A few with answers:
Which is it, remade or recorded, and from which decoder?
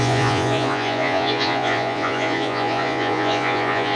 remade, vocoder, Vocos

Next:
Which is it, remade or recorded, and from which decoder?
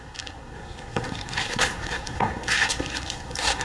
remade, codec, SNAC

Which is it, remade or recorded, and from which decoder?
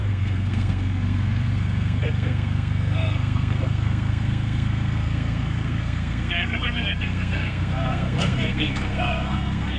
remade, codec, SNAC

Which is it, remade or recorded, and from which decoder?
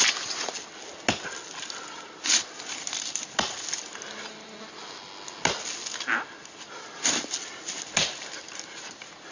recorded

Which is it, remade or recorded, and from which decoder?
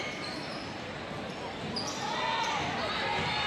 recorded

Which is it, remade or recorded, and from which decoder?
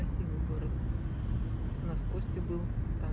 recorded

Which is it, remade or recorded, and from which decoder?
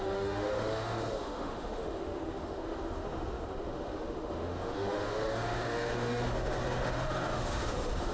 remade, autoencoder, DAC-VAE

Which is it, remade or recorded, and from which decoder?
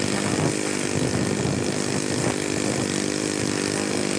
recorded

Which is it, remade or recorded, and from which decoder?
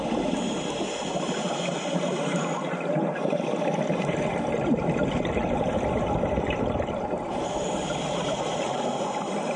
recorded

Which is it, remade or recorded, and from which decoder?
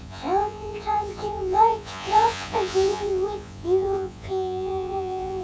remade, vocoder, Vocos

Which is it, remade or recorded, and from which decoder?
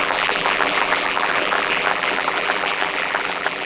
remade, vocoder, BigVGAN v2